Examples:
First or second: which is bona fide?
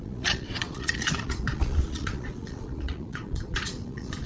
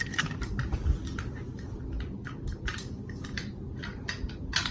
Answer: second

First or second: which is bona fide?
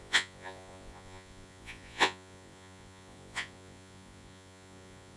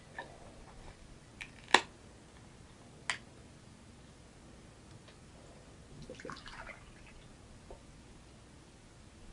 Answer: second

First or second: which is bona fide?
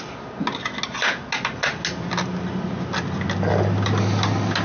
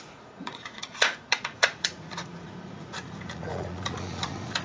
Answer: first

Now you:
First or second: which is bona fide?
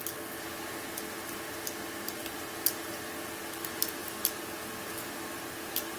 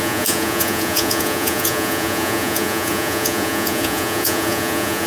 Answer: first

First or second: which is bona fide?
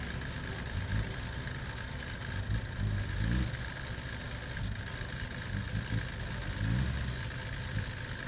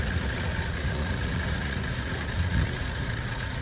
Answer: first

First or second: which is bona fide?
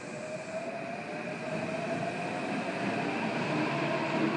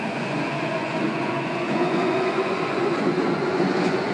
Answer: first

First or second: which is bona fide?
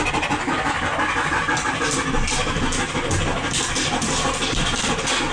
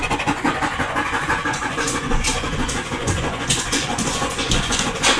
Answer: first